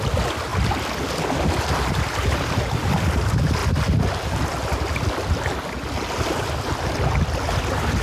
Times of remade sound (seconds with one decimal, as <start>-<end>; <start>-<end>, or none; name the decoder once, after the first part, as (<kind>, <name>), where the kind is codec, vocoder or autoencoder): none